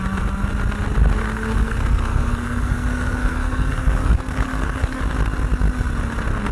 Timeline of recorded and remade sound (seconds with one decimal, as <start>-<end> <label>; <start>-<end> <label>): 0.0-1.2 recorded; 1.2-5.0 remade; 5.0-6.5 recorded